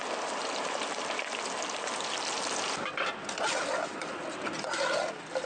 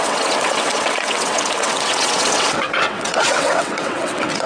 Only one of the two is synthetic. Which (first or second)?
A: second